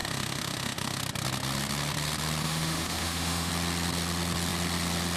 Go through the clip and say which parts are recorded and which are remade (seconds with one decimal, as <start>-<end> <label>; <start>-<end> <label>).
0.0-1.0 remade; 1.0-2.4 recorded; 2.4-3.5 remade; 3.5-5.2 recorded